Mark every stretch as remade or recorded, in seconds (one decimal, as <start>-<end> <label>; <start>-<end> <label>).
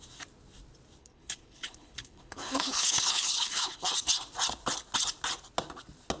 0.0-1.0 recorded; 1.0-3.9 remade; 3.9-6.2 recorded